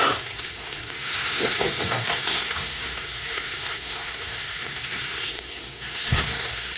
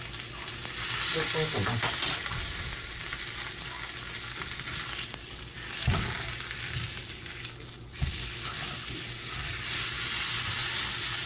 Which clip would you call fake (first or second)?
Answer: first